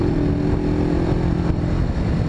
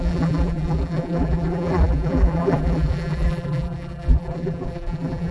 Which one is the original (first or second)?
first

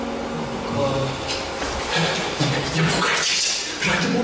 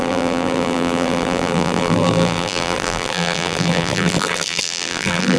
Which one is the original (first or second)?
first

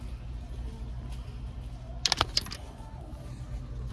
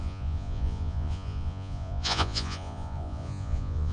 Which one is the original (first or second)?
first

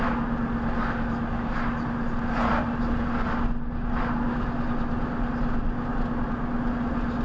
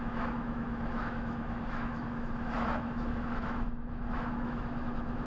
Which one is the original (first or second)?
first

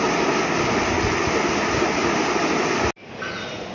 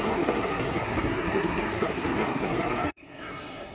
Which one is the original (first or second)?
first